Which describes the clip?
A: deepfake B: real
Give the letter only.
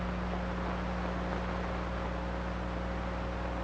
B